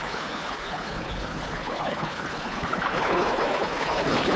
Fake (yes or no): yes